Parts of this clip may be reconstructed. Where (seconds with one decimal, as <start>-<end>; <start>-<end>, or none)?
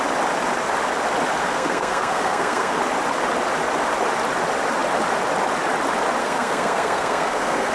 1.4-2.8; 6.2-7.7